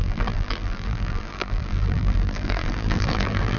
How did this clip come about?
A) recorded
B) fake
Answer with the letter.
B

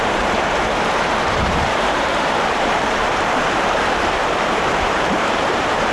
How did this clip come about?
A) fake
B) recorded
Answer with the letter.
A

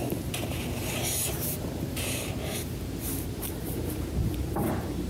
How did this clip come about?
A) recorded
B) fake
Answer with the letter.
B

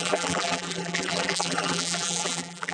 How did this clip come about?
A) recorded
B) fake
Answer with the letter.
B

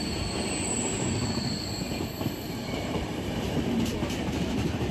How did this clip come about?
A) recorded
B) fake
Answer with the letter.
B